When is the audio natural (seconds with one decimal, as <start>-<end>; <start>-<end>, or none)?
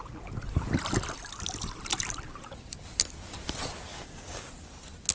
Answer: 0.0-3.9; 4.5-5.1